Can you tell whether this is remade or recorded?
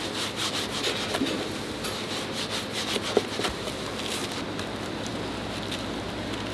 recorded